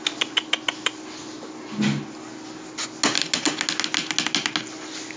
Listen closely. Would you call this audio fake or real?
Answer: real